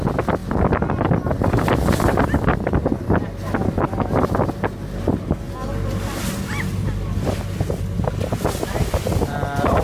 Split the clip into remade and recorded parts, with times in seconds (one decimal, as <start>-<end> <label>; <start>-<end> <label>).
0.0-9.8 recorded